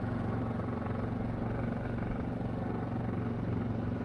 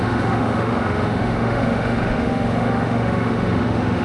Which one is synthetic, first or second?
second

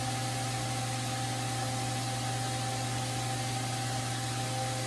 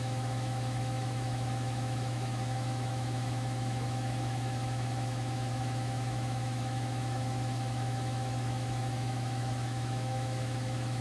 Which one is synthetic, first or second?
second